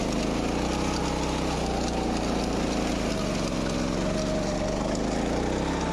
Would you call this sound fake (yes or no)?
no